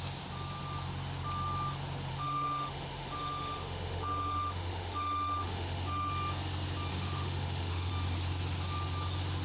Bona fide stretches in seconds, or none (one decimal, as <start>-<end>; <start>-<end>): 0.0-2.1; 6.1-6.9; 7.9-9.4